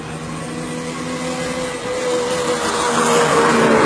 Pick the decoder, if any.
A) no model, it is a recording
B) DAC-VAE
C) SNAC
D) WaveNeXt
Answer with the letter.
A